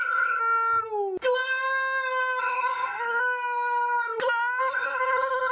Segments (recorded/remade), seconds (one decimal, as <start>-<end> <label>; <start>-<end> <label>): 0.0-0.4 remade; 0.4-2.4 recorded; 2.4-3.2 remade; 3.2-4.6 recorded; 4.6-5.5 remade